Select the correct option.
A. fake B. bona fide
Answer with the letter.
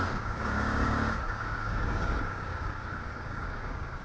A